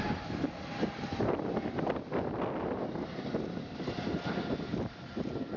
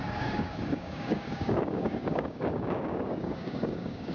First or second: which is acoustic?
first